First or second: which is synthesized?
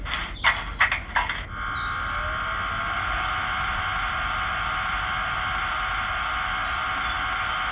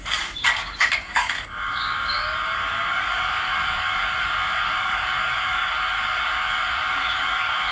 second